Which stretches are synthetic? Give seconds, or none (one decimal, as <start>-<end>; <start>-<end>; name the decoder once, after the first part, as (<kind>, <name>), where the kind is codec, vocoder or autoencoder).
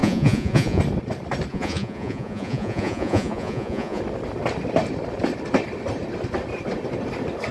0.0-0.8 (vocoder, Vocos); 1.5-4.0